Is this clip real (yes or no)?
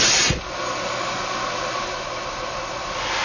yes